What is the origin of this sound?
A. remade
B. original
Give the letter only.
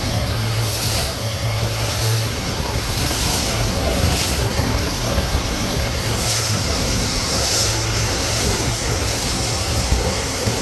A